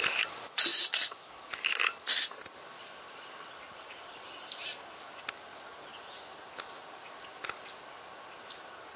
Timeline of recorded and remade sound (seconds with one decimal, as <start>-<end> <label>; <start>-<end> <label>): 0.0-0.7 recorded; 0.7-1.6 remade; 1.6-9.0 recorded